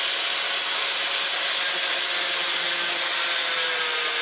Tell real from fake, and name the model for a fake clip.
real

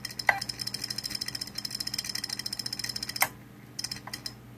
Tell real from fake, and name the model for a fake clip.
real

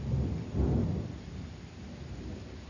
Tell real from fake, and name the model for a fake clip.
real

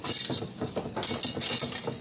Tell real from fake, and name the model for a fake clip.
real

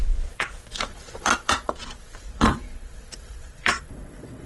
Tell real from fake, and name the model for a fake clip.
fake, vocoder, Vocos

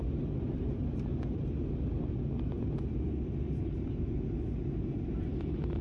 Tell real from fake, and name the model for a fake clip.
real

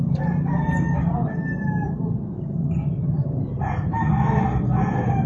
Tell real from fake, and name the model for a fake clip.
real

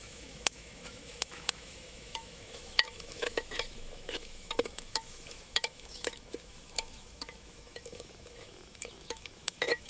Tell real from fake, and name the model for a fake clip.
fake, autoencoder, DAC-VAE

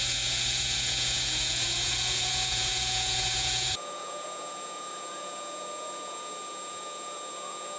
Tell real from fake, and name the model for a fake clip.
fake, vocoder, Vocos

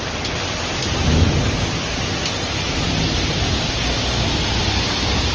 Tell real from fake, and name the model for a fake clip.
real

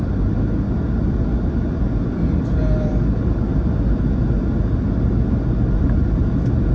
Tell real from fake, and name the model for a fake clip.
real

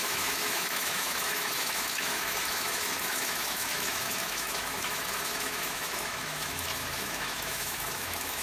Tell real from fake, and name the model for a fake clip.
fake, autoencoder, DAC-VAE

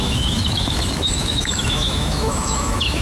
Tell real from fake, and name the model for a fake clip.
fake, autoencoder, DAC-VAE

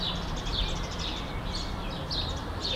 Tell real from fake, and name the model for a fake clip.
real